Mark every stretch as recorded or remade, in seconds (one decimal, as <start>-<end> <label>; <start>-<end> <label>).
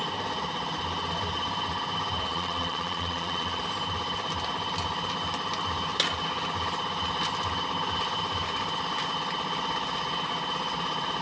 0.0-2.3 recorded; 2.3-3.6 remade; 3.6-11.2 recorded